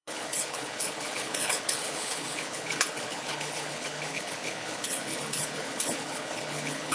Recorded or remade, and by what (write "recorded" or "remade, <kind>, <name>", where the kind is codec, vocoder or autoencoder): remade, codec, HILCodec